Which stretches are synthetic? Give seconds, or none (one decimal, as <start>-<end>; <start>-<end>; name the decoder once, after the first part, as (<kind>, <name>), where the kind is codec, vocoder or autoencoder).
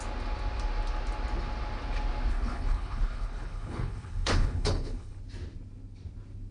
2.3-5.2 (codec, HILCodec)